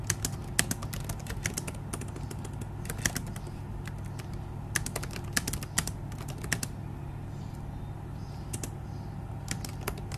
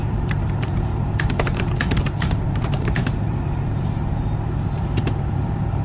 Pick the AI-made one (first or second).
second